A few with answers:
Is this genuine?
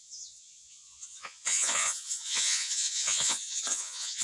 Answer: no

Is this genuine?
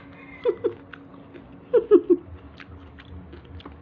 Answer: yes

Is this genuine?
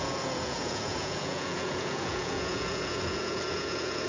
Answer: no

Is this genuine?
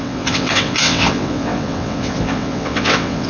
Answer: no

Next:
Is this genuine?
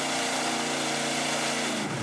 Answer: yes